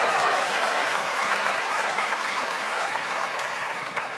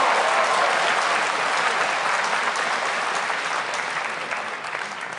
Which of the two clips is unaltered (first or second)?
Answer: second